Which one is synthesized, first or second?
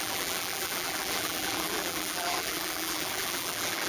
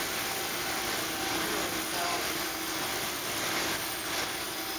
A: first